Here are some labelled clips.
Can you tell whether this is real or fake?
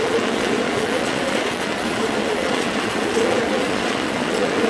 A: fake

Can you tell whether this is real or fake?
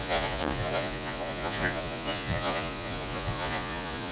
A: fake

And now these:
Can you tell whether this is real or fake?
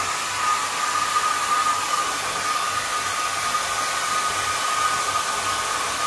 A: real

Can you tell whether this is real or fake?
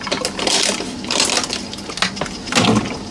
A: real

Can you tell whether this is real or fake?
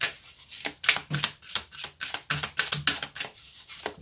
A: real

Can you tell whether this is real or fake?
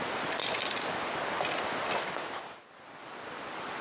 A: real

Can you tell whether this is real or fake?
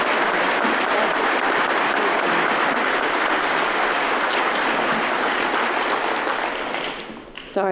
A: real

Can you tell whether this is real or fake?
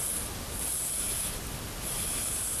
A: real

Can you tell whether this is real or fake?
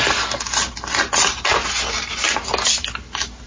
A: real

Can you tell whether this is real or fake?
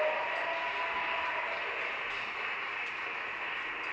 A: real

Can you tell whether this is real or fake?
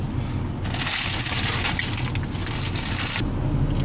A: real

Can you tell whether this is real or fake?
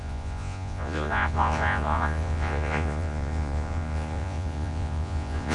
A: fake